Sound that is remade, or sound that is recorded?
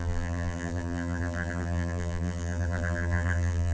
remade